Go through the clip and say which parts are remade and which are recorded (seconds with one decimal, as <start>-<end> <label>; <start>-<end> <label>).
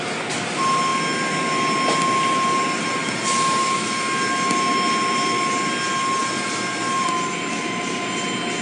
0.0-8.6 recorded